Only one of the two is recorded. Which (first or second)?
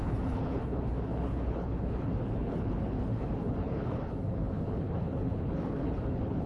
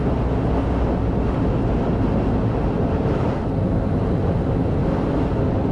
second